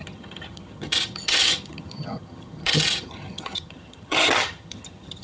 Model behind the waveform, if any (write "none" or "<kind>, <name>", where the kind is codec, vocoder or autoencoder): vocoder, HiFi-GAN